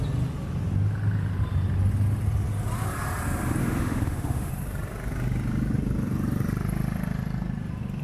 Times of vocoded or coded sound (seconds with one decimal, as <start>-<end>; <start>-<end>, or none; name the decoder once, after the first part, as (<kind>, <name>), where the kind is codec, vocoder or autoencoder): 3.6-4.5 (autoencoder, DAC-VAE)